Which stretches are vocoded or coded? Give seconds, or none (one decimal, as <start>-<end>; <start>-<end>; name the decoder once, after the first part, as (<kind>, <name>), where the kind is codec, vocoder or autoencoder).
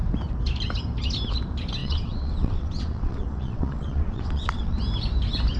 1.8-4.8 (vocoder, WaveNeXt)